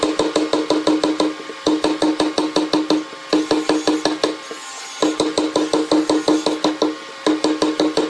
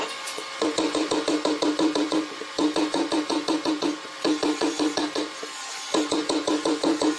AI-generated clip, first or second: second